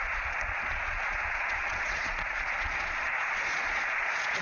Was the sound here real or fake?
fake